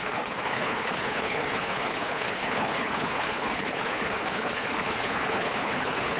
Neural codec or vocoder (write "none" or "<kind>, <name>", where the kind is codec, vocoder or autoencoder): codec, HILCodec